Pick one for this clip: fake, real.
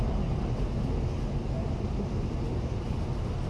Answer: real